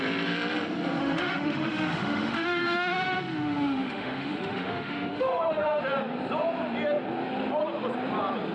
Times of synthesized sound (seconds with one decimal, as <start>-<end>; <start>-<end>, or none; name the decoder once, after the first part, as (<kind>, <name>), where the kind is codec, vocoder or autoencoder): 1.0-5.8 (autoencoder, DAC-VAE)